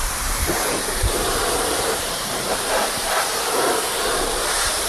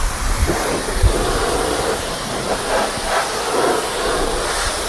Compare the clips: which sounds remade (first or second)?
first